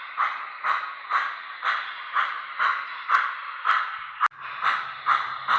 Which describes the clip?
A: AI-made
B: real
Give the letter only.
B